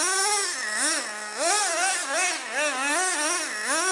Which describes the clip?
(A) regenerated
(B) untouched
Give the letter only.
B